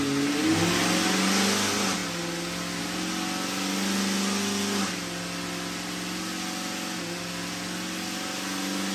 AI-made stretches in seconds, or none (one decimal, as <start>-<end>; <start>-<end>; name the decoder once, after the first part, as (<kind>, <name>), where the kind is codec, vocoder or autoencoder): none